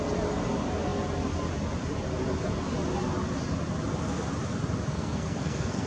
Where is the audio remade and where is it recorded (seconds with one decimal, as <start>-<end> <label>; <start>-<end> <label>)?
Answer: 0.0-4.9 recorded; 4.9-5.9 remade